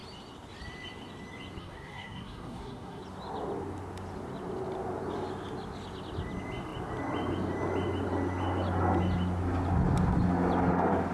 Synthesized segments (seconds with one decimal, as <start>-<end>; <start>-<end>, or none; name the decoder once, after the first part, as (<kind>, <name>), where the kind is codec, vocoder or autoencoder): 1.6-3.0 (codec, SNAC)